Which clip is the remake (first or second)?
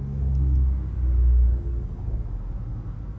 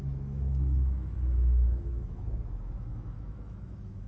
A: second